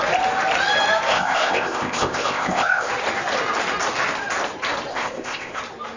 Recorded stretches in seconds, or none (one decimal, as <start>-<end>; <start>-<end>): 0.0-1.1; 2.9-4.9; 5.6-6.0